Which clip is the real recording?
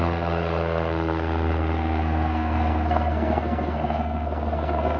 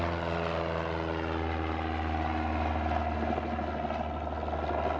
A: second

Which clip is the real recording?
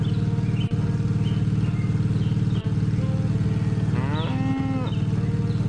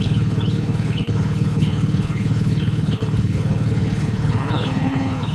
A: first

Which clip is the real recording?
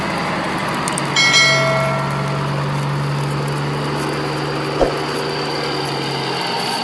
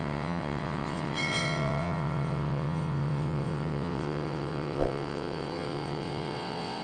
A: first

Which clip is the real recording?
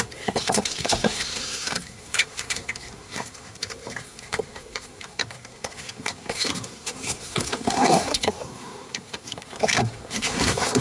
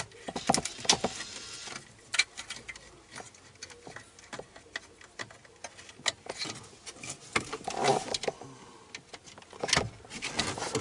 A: second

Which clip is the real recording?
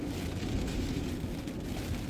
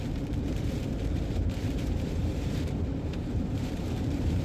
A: first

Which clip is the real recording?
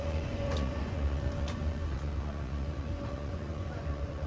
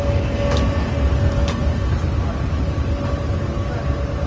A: second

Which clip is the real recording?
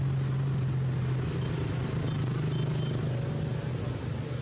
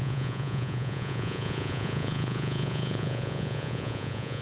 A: first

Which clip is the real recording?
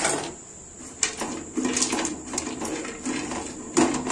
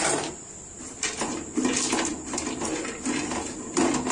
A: first